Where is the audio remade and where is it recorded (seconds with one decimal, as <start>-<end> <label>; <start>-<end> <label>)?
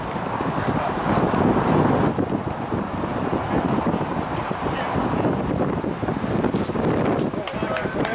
0.0-8.1 recorded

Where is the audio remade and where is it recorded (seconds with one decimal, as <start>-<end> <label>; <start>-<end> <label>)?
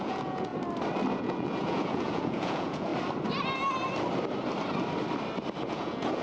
0.0-0.5 remade; 0.5-1.2 recorded; 1.2-2.9 remade; 2.9-5.7 recorded; 5.7-6.2 remade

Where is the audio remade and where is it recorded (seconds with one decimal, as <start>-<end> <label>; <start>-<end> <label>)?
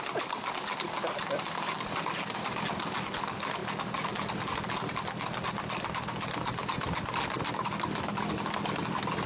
0.0-9.3 recorded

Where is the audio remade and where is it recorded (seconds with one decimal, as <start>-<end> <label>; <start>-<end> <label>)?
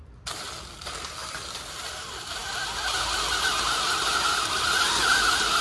0.0-5.6 recorded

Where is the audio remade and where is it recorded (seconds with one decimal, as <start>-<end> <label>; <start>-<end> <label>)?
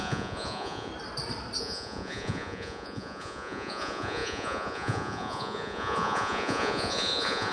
0.0-0.9 remade; 0.9-1.6 recorded; 1.6-7.5 remade